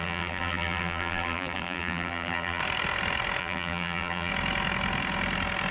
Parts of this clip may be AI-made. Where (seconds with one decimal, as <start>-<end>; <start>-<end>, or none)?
0.0-2.6; 3.4-4.3